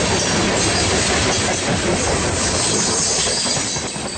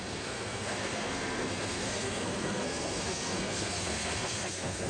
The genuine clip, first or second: first